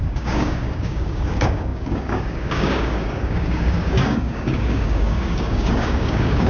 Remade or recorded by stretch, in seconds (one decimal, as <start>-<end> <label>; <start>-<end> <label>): 0.0-6.5 remade